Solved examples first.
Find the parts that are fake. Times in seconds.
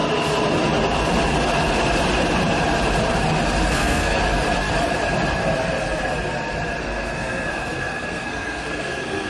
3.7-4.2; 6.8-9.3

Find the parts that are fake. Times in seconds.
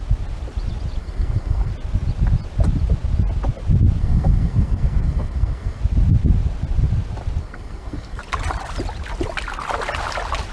1.0-1.7; 4.0-5.8; 7.4-8.2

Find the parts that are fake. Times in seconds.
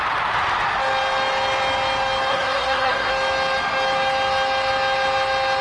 2.3-3.1